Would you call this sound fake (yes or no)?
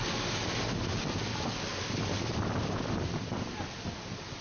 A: no